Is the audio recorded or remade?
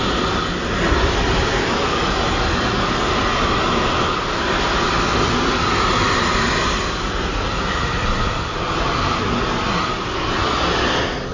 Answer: recorded